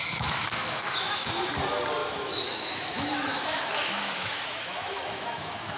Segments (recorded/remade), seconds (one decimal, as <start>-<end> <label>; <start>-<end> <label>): 0.0-1.4 remade; 1.4-2.0 recorded; 2.0-5.8 remade